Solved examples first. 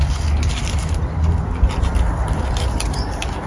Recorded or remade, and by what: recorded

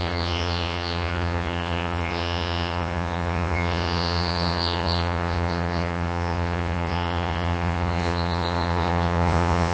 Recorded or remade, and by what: remade, vocoder, Vocos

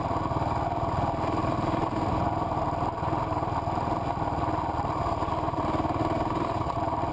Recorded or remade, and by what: recorded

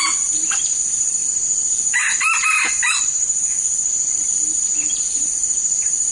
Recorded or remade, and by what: recorded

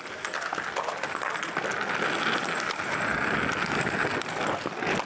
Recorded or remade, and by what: recorded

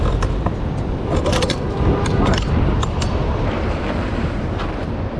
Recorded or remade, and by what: remade, vocoder, BigVGAN v2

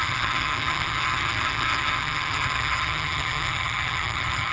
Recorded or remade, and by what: remade, vocoder, HiFi-GAN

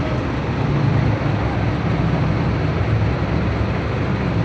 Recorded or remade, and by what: recorded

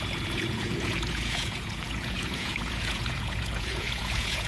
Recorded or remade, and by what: remade, vocoder, Vocos